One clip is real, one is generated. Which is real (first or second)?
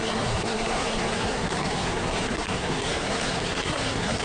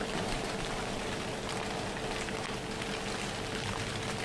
second